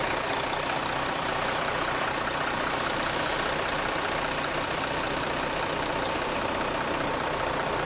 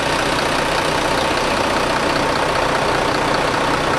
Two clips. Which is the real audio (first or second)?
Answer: second